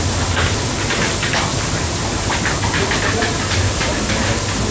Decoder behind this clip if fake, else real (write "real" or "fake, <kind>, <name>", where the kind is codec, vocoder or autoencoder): real